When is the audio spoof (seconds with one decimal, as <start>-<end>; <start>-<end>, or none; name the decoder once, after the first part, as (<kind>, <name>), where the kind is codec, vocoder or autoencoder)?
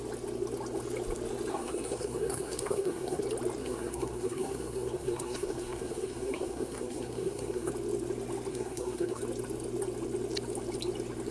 1.5-3.2 (codec, SNAC); 3.6-7.7; 8.5-9.2